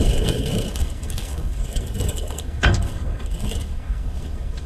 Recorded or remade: remade